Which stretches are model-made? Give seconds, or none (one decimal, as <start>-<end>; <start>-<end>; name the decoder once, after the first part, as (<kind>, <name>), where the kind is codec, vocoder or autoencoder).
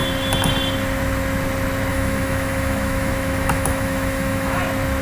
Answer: 1.9-4.6 (autoencoder, DAC-VAE)